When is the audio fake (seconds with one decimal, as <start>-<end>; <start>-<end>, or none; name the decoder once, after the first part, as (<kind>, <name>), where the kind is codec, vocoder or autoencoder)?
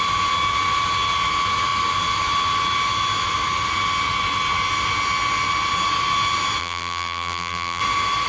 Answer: 6.6-7.8 (vocoder, BigVGAN v2)